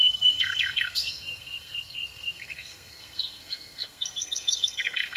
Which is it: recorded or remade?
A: remade